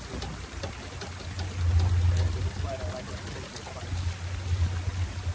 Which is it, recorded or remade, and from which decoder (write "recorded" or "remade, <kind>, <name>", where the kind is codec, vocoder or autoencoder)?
recorded